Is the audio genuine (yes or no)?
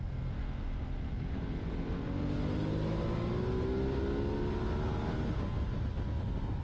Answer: yes